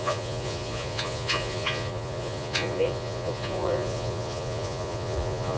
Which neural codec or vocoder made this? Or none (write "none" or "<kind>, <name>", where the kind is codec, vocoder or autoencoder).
vocoder, Vocos